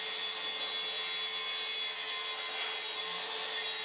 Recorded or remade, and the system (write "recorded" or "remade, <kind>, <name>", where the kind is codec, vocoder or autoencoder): recorded